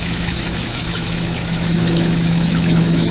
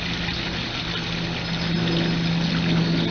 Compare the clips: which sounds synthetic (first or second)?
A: first